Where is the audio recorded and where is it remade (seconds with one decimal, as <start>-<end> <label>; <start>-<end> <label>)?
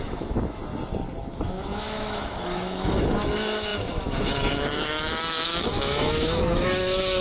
0.0-0.6 remade; 0.6-1.2 recorded; 1.2-7.2 remade